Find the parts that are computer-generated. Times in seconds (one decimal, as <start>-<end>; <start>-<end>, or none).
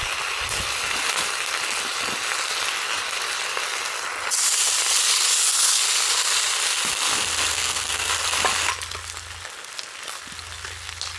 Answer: 7.5-8.1